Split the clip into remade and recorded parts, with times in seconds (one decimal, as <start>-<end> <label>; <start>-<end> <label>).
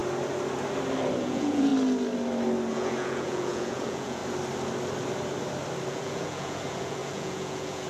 0.0-1.2 recorded; 1.2-1.7 remade; 1.7-2.7 recorded; 2.7-4.2 remade; 4.2-5.9 recorded; 5.9-7.9 remade